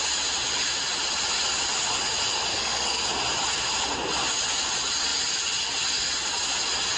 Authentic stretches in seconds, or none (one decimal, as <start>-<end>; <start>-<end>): 0.0-2.5; 3.0-7.0

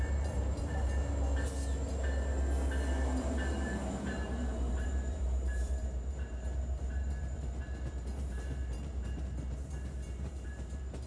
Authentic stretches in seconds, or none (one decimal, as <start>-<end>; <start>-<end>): 1.0-3.2